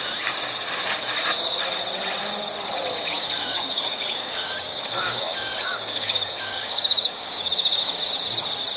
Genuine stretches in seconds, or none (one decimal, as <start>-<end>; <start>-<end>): 0.0-2.9; 8.0-8.8